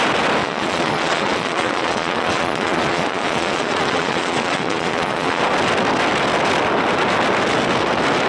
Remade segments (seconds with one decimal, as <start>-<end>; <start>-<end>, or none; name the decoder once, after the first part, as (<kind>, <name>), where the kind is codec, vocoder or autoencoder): 0.4-5.4 (vocoder, Vocos)